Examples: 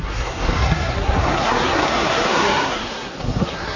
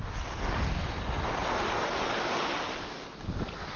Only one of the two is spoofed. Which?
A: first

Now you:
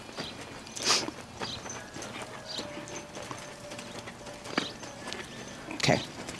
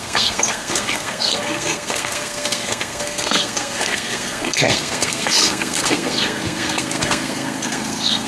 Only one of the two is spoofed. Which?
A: second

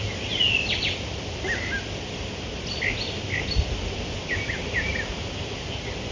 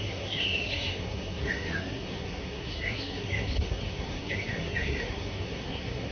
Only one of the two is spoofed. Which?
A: second